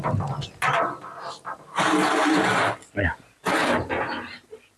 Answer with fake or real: real